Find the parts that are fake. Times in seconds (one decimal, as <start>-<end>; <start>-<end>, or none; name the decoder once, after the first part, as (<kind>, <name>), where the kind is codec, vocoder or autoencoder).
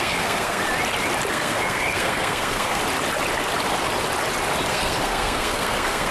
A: 0.0-0.6 (codec, SNAC); 1.3-2.8; 4.7-6.1